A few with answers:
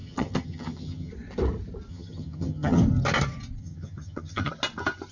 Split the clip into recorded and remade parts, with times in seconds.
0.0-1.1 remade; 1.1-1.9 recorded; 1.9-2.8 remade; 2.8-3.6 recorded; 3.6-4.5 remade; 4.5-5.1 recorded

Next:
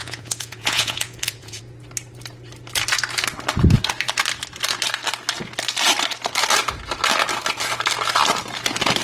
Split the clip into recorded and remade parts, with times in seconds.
0.0-1.6 remade; 1.6-9.0 recorded

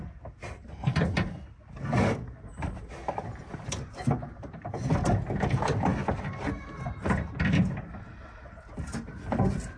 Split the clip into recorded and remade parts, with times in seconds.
0.0-9.8 recorded

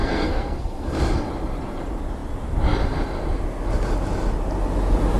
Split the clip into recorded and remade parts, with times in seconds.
0.0-1.0 remade; 1.0-5.2 recorded

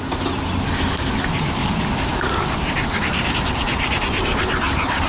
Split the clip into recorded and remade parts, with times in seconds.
0.0-5.1 recorded

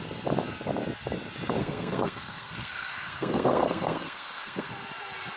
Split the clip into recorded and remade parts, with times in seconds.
0.0-1.6 recorded; 1.6-4.7 remade; 4.7-5.4 recorded

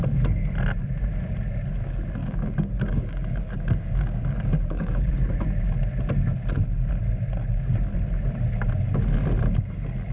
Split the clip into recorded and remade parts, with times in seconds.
0.0-2.2 recorded; 2.2-5.1 remade; 5.1-10.1 recorded

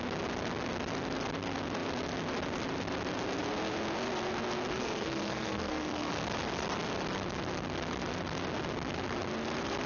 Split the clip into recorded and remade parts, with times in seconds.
0.0-4.7 recorded; 4.7-6.1 remade; 6.1-9.9 recorded